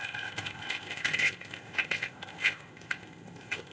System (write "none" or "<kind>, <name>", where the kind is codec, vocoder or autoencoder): codec, ZipCodec